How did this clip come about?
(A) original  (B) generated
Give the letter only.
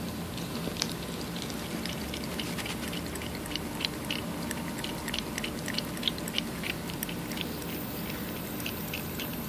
A